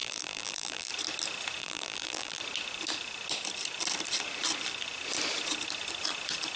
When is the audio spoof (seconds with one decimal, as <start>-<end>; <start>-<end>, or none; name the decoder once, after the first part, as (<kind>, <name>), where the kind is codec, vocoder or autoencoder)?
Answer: 0.0-0.9 (vocoder, BigVGAN v2); 1.6-2.4